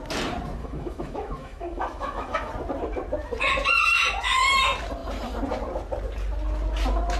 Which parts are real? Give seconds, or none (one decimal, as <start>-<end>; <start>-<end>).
0.0-0.6; 2.5-7.2